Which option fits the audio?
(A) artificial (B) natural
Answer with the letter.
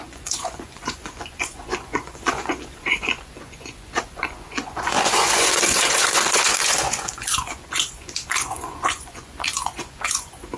A